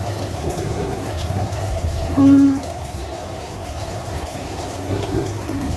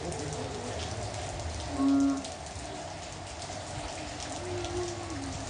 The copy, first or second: first